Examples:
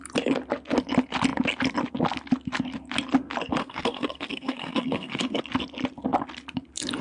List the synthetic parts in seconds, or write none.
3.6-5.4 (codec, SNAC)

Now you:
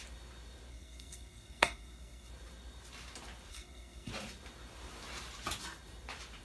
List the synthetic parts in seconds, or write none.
0.7-2.3 (codec, SNAC); 3.5-4.1

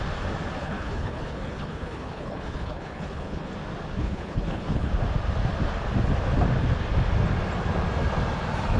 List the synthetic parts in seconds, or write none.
0.6-3.5 (codec, HILCodec); 4.0-4.9

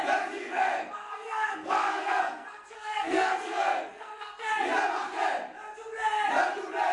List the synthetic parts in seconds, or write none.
0.4-4.5 (codec, SNAC)

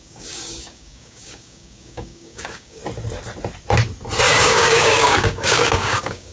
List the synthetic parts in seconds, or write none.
0.0-2.8 (codec, DAC); 4.4-6.3

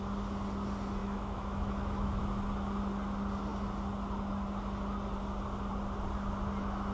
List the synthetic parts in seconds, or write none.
1.0-2.2 (autoencoder, DAC-VAE)